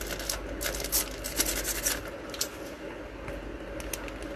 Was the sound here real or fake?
real